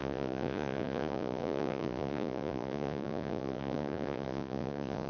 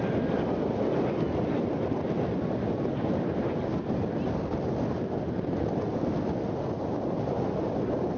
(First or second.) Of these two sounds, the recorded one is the second